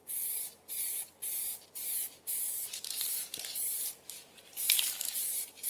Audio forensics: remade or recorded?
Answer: remade